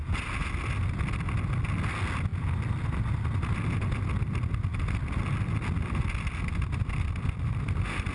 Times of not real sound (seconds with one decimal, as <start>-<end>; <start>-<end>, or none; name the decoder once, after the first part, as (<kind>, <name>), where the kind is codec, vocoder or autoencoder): none

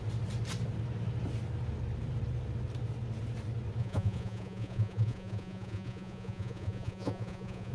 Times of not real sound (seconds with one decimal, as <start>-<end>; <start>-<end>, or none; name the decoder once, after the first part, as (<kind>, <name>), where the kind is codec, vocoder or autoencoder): 3.8-7.7 (vocoder, Vocos)